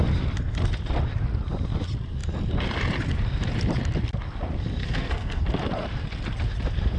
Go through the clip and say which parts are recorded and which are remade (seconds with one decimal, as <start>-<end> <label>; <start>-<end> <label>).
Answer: 0.0-4.8 recorded; 4.8-5.4 remade; 5.4-7.0 recorded

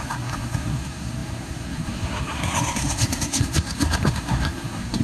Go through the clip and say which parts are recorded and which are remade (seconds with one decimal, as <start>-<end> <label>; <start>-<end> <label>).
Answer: 0.0-5.0 remade

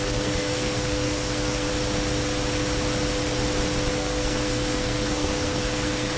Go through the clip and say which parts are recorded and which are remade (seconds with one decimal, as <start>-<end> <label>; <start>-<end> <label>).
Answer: 0.0-1.7 remade; 1.7-3.9 recorded; 3.9-6.2 remade